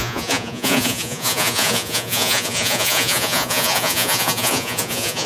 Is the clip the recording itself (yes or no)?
no